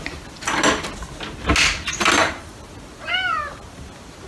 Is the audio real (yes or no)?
yes